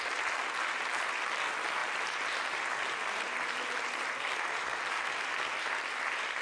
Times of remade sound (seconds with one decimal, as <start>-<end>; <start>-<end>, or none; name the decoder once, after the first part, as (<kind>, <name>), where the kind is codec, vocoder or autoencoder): none